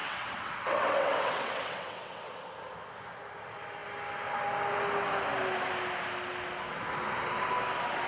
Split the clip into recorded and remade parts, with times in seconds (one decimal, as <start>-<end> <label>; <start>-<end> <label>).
0.0-2.3 remade; 2.3-8.1 recorded